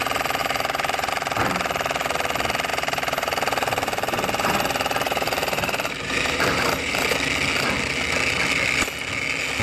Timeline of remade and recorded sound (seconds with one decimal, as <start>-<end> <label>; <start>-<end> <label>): 0.0-0.4 recorded; 0.4-1.1 remade; 1.1-2.7 recorded; 2.7-7.1 remade; 7.1-9.6 recorded